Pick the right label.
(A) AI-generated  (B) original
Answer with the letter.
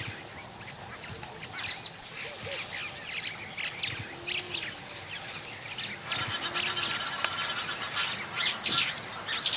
B